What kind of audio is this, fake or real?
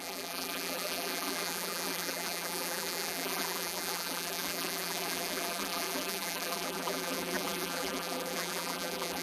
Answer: fake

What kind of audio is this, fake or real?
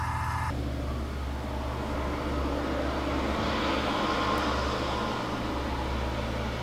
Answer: real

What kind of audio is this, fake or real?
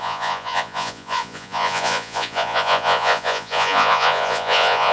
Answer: fake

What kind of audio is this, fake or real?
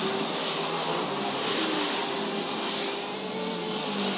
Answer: real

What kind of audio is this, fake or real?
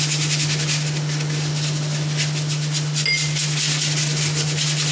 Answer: real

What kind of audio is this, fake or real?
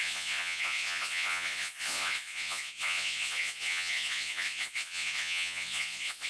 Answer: fake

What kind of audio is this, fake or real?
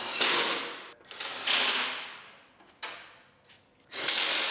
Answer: real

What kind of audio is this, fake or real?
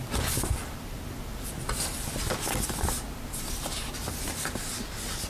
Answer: real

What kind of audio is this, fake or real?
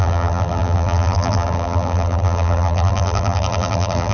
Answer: fake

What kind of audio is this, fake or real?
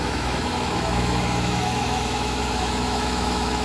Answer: fake